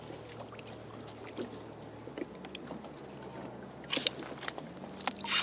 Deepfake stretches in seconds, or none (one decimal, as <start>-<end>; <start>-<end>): none